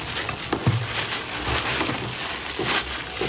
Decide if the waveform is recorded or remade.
recorded